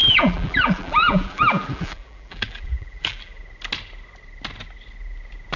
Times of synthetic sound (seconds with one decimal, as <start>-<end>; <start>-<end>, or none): 0.0-3.4